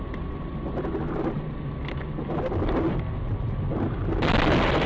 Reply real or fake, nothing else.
real